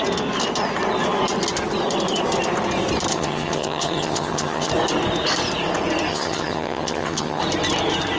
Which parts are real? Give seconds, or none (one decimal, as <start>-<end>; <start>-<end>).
0.0-3.1; 4.7-6.1; 7.4-8.2